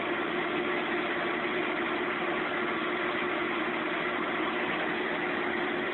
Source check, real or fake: real